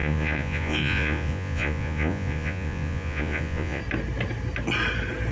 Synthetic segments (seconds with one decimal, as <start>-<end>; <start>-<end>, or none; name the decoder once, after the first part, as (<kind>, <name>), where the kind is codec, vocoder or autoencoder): 0.0-3.8 (vocoder, Vocos)